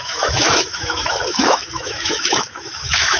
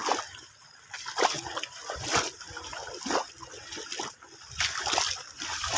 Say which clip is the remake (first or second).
first